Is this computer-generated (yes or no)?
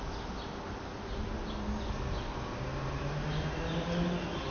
no